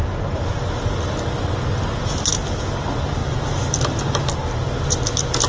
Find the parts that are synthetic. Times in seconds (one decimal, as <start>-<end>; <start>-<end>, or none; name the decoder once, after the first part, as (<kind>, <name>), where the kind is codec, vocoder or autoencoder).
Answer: none

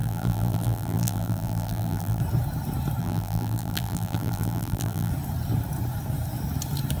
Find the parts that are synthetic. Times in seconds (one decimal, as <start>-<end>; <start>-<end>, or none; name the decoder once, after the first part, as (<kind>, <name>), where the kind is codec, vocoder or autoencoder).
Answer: 0.0-2.2 (vocoder, BigVGAN v2); 3.0-5.1